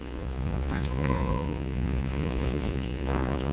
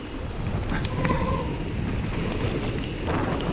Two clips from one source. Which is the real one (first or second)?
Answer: second